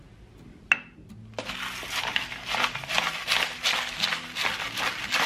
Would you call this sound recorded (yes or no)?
yes